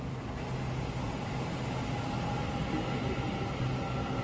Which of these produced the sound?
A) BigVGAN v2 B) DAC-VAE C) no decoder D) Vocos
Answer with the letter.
C